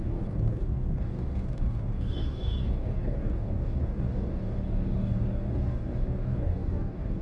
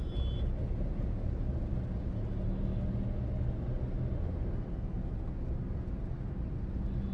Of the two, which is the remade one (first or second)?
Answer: first